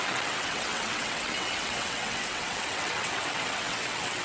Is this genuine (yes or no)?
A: no